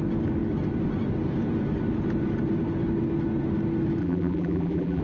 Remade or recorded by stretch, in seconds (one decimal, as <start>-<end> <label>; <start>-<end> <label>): 0.0-4.0 recorded; 4.0-5.0 remade